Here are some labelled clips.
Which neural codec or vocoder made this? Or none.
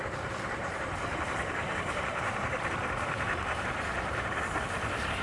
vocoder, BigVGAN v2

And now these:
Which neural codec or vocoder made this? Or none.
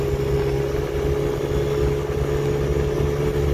none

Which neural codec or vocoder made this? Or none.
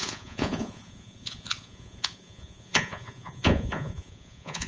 vocoder, Vocos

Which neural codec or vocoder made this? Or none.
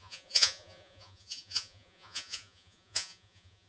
vocoder, Vocos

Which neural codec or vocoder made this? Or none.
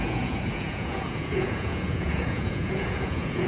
vocoder, Vocos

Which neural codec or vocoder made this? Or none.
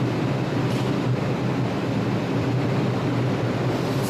vocoder, BigVGAN v2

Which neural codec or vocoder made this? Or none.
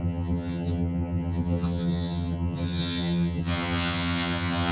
vocoder, HiFi-GAN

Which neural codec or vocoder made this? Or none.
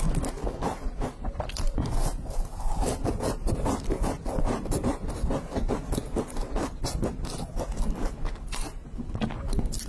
none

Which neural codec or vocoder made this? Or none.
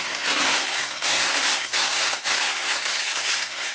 codec, SNAC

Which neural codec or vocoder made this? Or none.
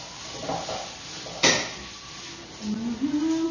none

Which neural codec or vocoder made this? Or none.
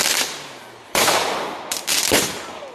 vocoder, BigVGAN v2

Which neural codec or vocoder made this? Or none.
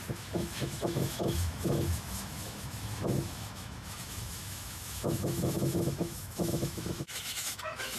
autoencoder, DAC-VAE